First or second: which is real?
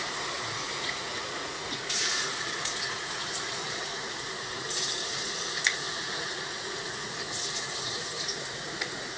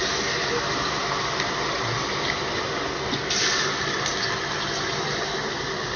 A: second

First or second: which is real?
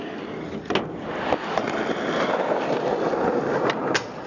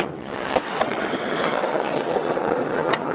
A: first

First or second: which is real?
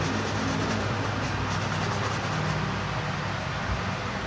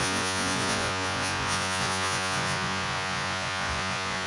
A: first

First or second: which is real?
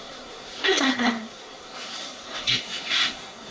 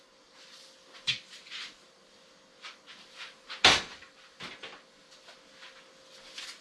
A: second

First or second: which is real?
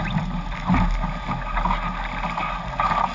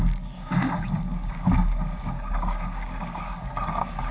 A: first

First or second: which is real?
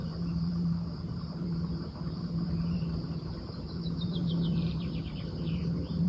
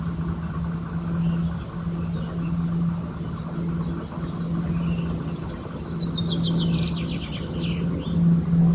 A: second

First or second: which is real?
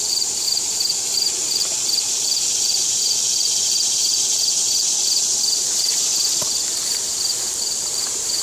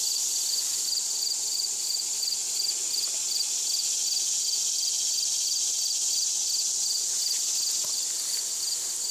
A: second